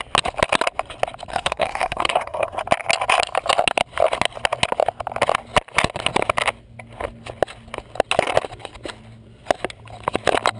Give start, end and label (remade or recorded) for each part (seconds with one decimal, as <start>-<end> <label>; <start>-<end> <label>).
0.0-1.3 recorded; 1.3-2.6 remade; 2.6-10.6 recorded